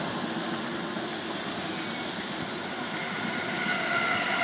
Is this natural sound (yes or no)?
yes